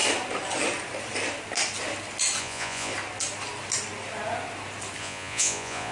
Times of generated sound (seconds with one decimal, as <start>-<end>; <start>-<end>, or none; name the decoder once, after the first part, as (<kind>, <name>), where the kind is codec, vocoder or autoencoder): 2.4-2.9 (vocoder, Vocos); 5.0-5.9